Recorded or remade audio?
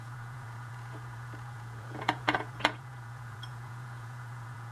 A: remade